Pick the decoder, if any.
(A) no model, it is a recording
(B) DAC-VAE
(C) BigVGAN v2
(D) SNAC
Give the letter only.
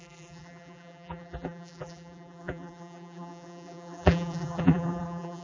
C